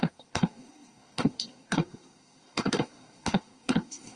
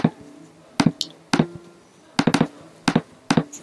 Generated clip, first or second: first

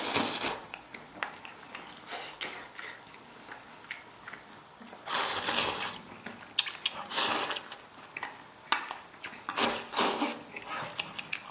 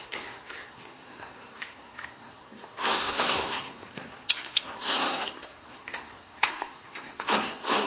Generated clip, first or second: second